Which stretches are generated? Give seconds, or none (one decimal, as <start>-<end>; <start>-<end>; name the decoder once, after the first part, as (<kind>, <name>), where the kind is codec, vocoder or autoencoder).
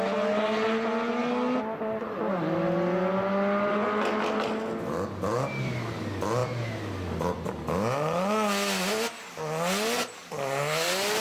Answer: none